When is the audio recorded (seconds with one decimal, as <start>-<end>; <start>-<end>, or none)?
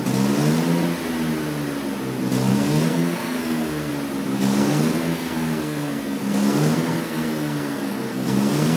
0.0-2.5; 3.9-4.3